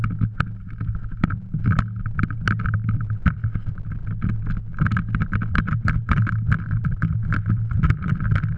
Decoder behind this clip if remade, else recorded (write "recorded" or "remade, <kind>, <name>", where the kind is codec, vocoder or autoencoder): recorded